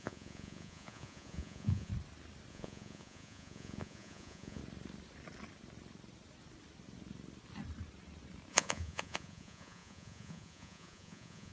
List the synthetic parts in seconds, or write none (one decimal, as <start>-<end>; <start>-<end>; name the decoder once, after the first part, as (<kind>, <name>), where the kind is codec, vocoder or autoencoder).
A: 0.0-1.9 (vocoder, Vocos); 2.5-4.6; 8.5-11.5